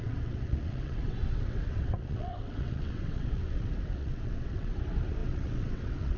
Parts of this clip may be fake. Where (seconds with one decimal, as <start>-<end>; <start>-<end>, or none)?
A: 0.0-6.2